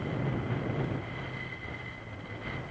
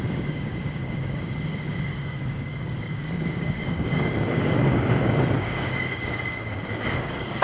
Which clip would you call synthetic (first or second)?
second